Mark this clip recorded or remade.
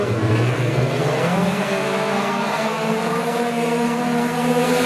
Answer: remade